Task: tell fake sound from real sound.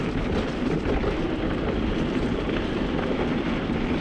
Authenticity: real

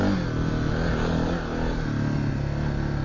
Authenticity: real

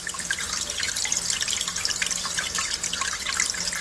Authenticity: real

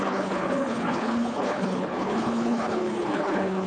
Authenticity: fake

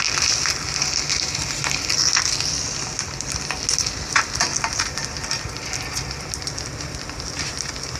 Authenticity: real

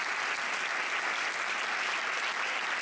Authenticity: real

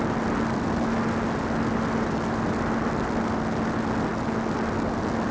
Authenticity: real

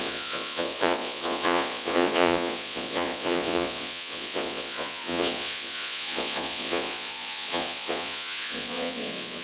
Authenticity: fake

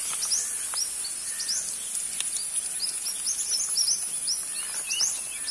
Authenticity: real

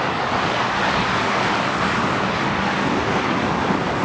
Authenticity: fake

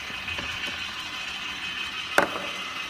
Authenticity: real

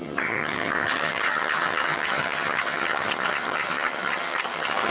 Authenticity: fake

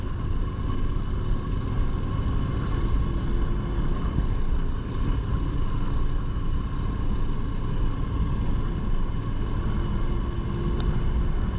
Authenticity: real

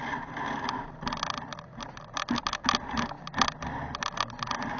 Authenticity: real